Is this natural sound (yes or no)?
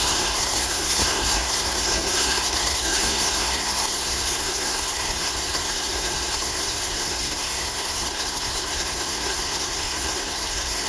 no